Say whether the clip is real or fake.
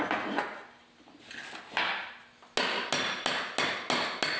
real